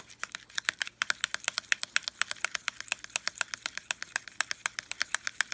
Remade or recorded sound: recorded